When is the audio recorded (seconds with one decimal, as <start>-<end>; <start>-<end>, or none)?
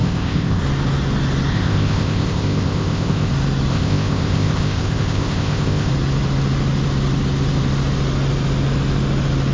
0.6-1.5; 3.3-3.7; 5.9-9.5